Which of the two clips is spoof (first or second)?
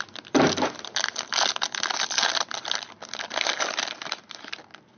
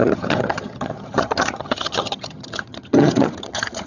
second